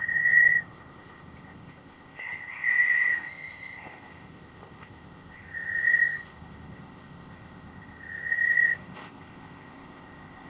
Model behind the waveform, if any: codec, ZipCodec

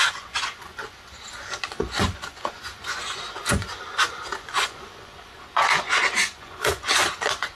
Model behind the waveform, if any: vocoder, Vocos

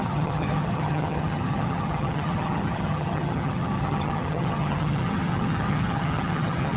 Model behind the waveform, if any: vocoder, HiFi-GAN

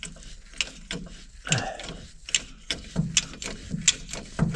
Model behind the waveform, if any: none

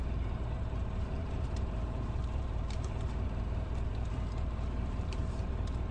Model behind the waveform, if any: vocoder, BigVGAN v2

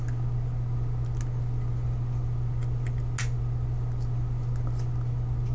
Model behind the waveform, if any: none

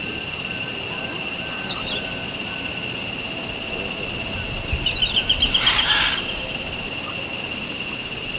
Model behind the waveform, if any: none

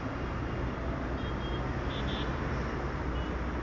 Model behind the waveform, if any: none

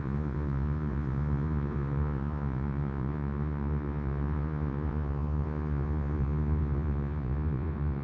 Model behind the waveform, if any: vocoder, Vocos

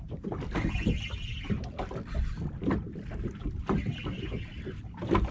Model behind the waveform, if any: none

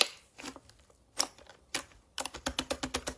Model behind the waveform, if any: none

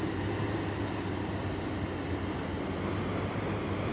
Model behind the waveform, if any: none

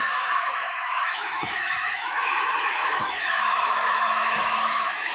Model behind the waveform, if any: autoencoder, DAC-VAE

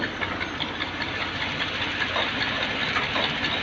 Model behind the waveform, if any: none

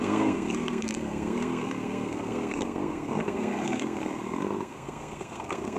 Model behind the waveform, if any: codec, SNAC